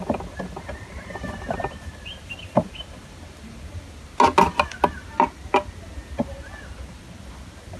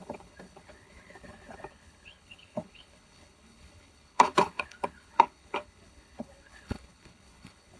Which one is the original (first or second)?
first